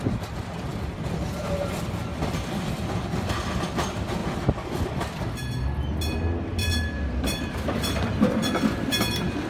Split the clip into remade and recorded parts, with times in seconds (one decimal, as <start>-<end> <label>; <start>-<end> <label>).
0.0-0.7 recorded; 0.7-1.5 remade; 1.5-4.2 recorded; 4.2-5.3 remade; 5.3-6.6 recorded; 6.6-8.5 remade; 8.5-9.5 recorded